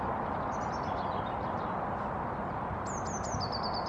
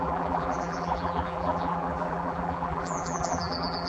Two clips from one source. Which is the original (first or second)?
first